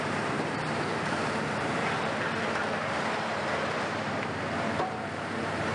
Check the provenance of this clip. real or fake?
fake